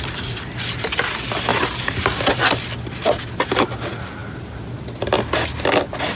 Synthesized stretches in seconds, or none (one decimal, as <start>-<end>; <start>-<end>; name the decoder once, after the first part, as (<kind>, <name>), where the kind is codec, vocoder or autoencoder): none